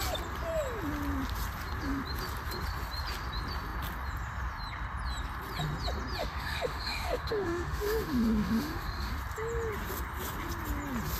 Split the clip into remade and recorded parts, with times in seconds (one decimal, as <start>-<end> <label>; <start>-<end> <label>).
0.0-6.2 recorded; 6.2-9.1 remade; 9.1-11.2 recorded